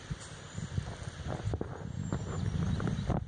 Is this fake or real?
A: real